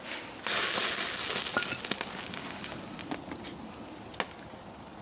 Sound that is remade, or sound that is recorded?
recorded